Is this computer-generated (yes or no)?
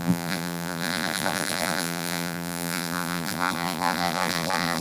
yes